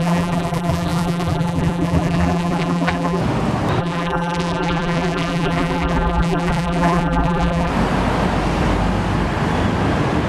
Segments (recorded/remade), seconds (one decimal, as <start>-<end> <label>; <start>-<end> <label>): 0.0-3.2 remade; 3.2-3.8 recorded; 3.8-7.7 remade; 7.7-10.3 recorded